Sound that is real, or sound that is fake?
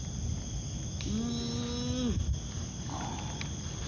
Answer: real